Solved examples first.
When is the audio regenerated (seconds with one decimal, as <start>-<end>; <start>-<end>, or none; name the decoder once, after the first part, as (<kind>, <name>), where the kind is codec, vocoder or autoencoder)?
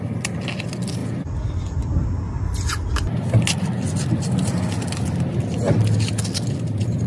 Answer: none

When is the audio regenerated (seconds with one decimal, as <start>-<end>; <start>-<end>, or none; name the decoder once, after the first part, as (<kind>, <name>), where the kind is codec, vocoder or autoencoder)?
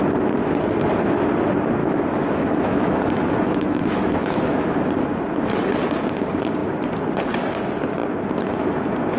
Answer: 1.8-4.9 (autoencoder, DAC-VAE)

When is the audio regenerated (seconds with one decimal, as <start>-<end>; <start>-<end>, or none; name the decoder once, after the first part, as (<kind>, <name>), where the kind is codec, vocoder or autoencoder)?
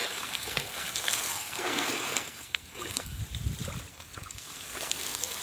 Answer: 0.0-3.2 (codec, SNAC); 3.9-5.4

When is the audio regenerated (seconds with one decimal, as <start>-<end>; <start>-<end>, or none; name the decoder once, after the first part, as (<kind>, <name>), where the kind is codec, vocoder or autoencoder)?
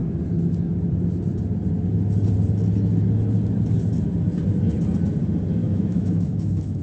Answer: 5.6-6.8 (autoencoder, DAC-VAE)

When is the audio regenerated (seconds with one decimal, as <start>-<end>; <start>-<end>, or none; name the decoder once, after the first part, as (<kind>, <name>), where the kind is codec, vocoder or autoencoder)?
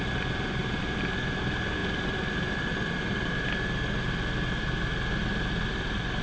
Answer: 0.0-0.6 (vocoder, BigVGAN v2); 1.4-1.8; 5.5-6.2